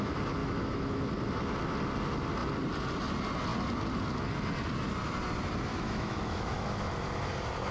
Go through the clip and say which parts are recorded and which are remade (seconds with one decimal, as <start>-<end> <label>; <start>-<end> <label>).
0.0-0.4 recorded; 0.4-1.1 remade; 1.1-5.7 recorded; 5.7-7.3 remade; 7.3-7.7 recorded

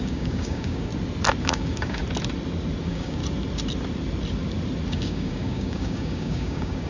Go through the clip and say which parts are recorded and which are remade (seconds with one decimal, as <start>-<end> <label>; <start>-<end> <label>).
0.0-0.9 remade; 0.9-1.4 recorded; 1.4-2.0 remade; 2.0-2.8 recorded; 2.8-3.2 remade; 3.2-4.9 recorded; 4.9-6.9 remade

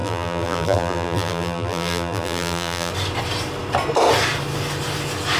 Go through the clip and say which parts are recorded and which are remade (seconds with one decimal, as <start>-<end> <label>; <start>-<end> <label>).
0.0-2.9 remade; 2.9-5.4 recorded

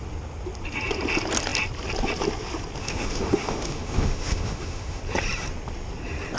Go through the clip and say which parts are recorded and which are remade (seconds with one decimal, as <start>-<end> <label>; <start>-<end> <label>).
0.0-2.8 recorded; 2.8-5.0 remade; 5.0-6.4 recorded

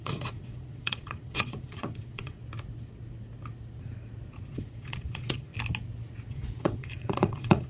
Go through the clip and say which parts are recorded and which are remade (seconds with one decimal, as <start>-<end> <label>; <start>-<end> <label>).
0.0-2.4 remade; 2.4-4.5 recorded; 4.5-5.5 remade; 5.5-6.3 recorded; 6.3-7.7 remade

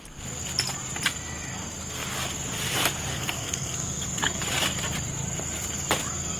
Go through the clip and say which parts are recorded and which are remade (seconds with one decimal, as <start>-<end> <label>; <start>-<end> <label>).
0.0-3.1 recorded; 3.1-4.4 remade; 4.4-6.4 recorded

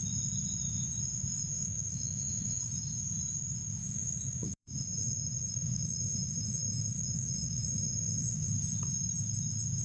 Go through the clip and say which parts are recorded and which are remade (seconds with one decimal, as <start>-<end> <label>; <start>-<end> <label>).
0.0-1.5 recorded; 1.5-2.6 remade; 2.6-3.8 recorded; 3.8-8.5 remade; 8.5-9.8 recorded